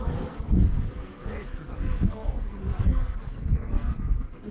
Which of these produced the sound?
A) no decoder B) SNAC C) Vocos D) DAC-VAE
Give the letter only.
B